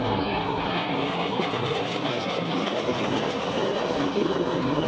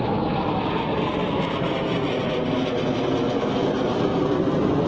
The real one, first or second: second